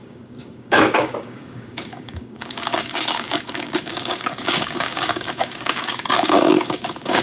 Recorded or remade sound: remade